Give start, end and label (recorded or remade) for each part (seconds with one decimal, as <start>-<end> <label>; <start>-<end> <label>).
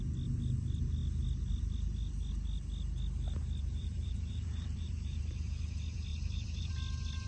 0.0-3.6 recorded; 3.6-5.2 remade; 5.2-6.1 recorded; 6.1-6.7 remade; 6.7-7.3 recorded